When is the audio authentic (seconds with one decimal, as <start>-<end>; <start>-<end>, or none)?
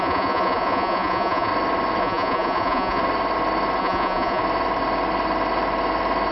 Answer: 1.5-2.0; 3.0-3.8; 4.4-6.3